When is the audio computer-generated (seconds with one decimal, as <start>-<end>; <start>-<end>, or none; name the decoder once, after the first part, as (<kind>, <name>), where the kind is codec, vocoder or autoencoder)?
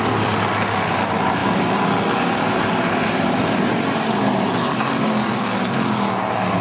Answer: none